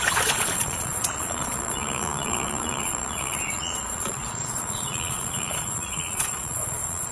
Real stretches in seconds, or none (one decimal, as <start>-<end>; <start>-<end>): none